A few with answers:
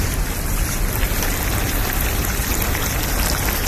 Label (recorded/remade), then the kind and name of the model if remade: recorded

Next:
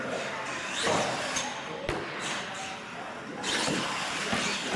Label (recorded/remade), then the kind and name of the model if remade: recorded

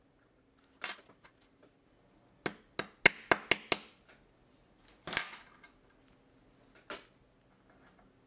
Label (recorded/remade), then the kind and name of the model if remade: recorded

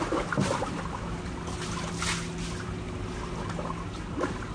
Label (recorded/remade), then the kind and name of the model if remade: recorded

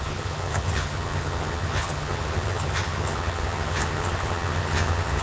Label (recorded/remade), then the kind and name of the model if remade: remade, vocoder, HiFi-GAN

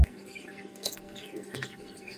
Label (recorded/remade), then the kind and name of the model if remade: remade, codec, SNAC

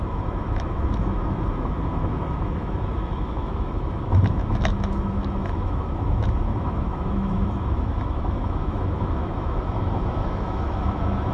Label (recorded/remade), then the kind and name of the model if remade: remade, autoencoder, DAC-VAE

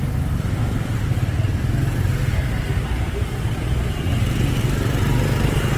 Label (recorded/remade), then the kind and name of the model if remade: recorded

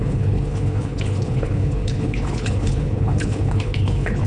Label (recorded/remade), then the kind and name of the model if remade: remade, codec, HILCodec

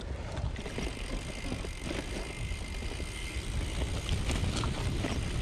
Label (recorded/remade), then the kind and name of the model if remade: recorded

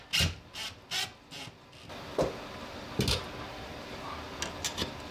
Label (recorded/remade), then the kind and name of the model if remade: recorded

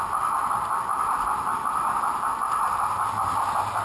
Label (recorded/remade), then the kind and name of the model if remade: recorded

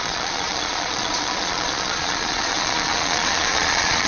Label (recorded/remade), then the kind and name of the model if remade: remade, vocoder, Vocos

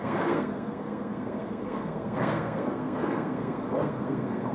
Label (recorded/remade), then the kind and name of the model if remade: remade, codec, SNAC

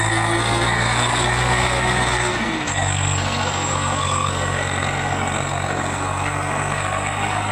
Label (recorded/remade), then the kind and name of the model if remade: remade, codec, SNAC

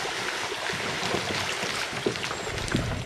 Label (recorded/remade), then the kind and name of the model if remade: recorded